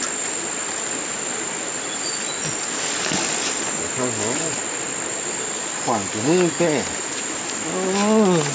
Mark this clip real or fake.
real